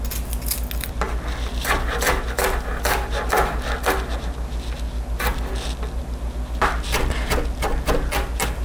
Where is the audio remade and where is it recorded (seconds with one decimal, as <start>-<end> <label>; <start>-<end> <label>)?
0.0-8.6 recorded